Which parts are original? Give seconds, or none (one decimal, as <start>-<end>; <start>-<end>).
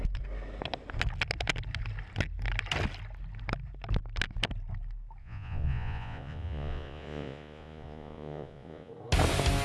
0.0-5.2; 8.9-9.6